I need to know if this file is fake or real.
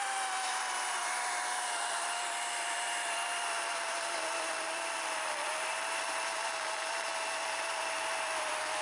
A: fake